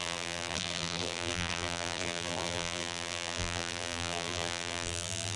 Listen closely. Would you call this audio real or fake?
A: fake